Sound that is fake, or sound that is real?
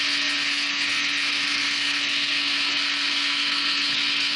fake